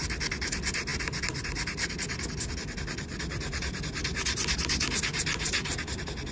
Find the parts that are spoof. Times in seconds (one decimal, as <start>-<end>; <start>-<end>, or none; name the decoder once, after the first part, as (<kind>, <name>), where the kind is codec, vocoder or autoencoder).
none